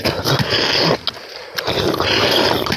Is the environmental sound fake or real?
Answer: real